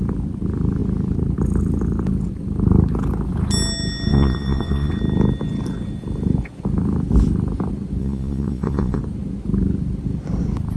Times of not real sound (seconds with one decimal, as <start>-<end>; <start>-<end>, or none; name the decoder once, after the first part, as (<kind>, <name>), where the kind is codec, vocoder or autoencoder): 4.1-4.9 (vocoder, Vocos); 8.0-9.0